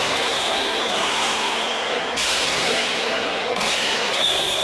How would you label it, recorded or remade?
remade